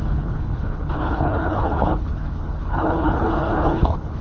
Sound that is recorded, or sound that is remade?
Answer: remade